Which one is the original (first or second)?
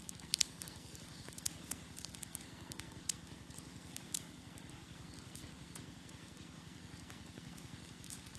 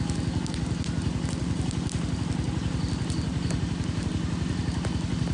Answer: second